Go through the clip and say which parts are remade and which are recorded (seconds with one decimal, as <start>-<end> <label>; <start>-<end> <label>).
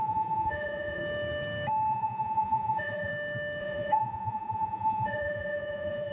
0.0-1.0 remade; 1.0-1.9 recorded; 1.9-3.1 remade; 3.1-3.6 recorded; 3.6-6.1 remade